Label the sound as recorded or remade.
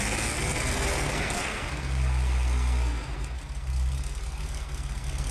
remade